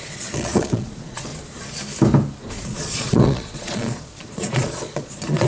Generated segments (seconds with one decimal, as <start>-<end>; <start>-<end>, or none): 0.0-1.3; 2.5-5.5